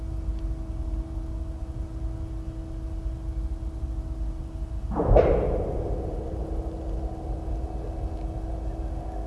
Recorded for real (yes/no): yes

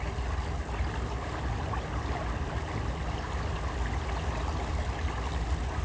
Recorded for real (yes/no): yes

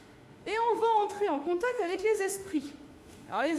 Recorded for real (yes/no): no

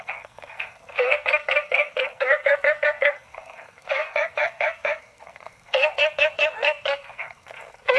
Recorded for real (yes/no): no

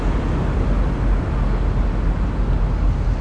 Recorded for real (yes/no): yes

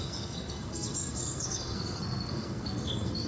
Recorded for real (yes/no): no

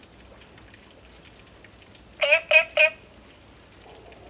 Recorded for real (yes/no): yes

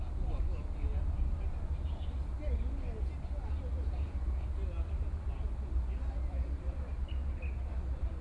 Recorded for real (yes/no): yes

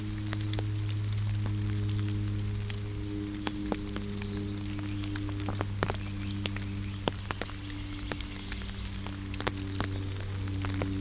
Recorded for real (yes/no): yes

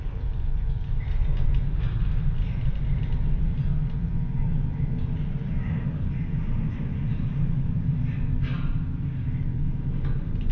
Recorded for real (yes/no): yes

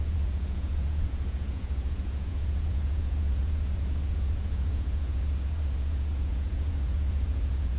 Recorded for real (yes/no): no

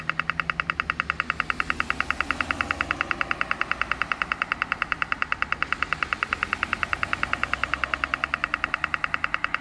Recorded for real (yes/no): yes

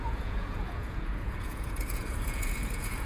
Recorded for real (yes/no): no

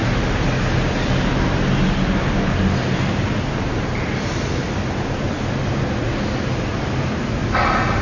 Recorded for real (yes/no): yes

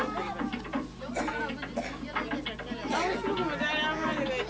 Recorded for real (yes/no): yes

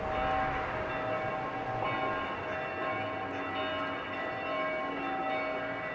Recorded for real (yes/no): yes